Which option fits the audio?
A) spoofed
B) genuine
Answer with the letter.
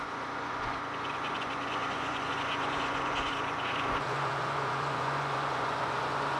A